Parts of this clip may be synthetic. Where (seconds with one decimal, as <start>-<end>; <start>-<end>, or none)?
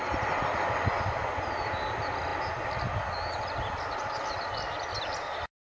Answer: none